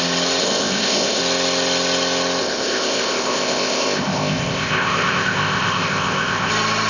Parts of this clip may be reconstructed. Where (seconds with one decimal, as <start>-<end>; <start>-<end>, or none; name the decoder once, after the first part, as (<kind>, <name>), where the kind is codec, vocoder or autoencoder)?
0.4-1.2 (codec, ZipCodec); 2.4-6.5